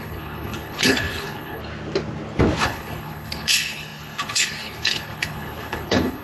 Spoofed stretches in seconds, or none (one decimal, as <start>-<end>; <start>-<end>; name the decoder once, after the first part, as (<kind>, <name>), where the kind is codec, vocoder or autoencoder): 0.0-1.6 (codec, HILCodec); 2.6-6.2